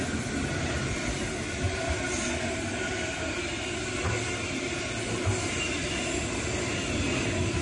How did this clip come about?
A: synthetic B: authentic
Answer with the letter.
B